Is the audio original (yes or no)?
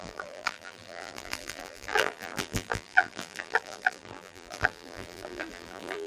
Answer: no